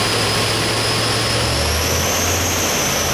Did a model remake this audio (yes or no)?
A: no